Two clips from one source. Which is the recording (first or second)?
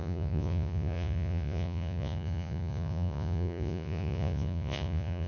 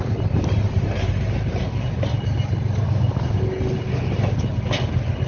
second